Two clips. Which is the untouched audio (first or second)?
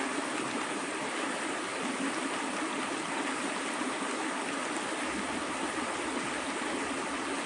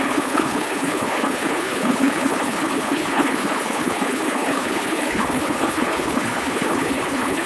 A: first